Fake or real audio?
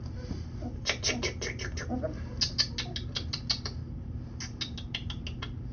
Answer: real